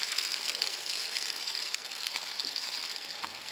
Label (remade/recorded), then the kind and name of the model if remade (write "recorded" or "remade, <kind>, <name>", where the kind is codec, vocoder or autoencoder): remade, codec, SNAC